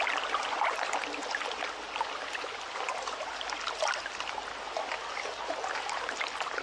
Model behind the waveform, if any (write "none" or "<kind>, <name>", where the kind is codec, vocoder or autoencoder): none